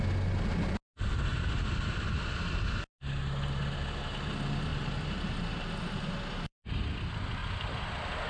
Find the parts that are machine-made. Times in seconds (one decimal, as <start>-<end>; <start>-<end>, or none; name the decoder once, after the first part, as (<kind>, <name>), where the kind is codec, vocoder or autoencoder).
4.7-6.6 (vocoder, BigVGAN v2); 7.4-7.9

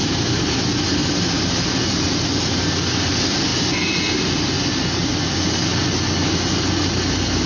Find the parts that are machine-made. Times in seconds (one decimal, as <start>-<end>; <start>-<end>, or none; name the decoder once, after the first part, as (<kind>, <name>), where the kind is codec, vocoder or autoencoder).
0.0-0.5 (vocoder, BigVGAN v2)

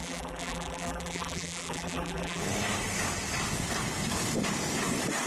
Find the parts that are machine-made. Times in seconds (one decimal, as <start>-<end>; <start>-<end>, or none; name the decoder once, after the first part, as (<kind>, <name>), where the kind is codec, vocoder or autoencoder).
0.0-2.4 (vocoder, BigVGAN v2)

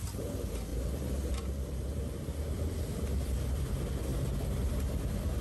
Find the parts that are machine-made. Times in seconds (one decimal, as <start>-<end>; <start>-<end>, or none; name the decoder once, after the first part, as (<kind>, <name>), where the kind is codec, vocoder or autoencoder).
0.7-3.6 (vocoder, BigVGAN v2)

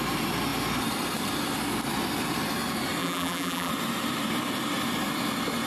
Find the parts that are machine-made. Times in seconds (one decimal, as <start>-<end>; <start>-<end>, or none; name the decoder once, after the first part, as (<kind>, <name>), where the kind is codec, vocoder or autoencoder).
3.0-3.7 (vocoder, BigVGAN v2)

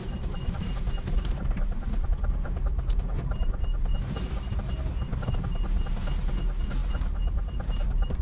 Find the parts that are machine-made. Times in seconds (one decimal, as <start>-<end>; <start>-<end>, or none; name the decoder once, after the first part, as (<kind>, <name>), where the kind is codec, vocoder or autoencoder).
0.0-2.1 (vocoder, BigVGAN v2); 2.7-3.9; 6.8-8.2